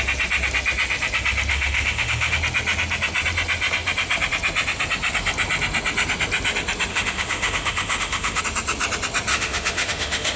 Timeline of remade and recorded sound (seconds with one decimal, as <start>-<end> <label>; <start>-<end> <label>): 0.0-1.5 recorded; 1.5-2.4 remade; 2.4-6.9 recorded; 6.9-8.4 remade; 8.4-9.3 recorded; 9.3-10.4 remade